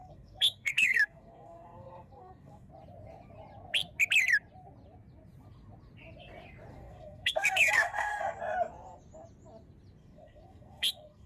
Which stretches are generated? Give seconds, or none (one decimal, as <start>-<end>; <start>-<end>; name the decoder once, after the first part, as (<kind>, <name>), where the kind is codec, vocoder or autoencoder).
0.0-2.7 (codec, SNAC); 6.7-8.4; 10.0-11.3